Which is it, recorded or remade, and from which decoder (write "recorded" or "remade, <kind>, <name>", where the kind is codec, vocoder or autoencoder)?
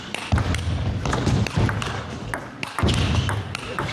recorded